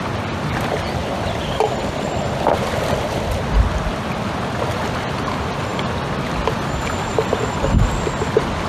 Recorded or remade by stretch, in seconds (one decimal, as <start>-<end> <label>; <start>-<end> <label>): 0.0-8.7 recorded